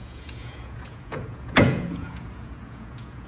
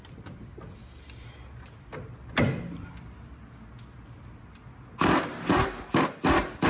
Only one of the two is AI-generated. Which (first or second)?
first